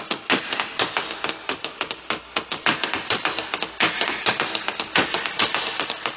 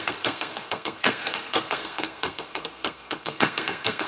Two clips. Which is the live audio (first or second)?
first